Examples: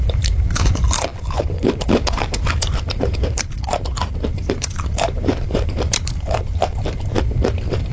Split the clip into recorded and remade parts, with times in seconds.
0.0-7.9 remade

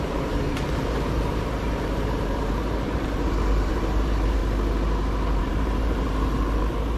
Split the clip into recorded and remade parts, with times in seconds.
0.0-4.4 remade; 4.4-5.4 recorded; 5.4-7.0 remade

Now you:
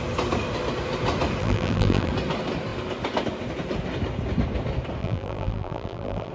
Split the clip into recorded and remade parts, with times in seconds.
0.0-1.4 recorded; 1.4-2.1 remade; 2.1-5.0 recorded; 5.0-6.3 remade

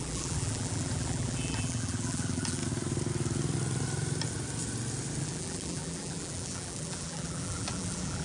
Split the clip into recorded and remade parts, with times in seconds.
0.0-2.6 remade; 2.6-5.2 recorded; 5.2-8.2 remade

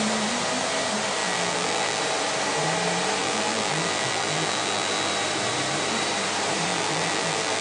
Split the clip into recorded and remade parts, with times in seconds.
0.0-1.2 recorded; 1.2-2.0 remade; 2.0-3.2 recorded; 3.2-5.1 remade; 5.1-6.7 recorded; 6.7-7.6 remade